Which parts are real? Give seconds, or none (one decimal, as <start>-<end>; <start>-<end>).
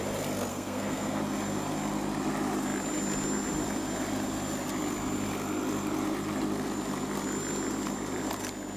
0.0-0.5; 1.2-8.8